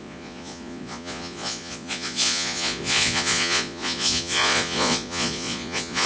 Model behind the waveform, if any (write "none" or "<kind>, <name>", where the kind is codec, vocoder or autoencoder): vocoder, Vocos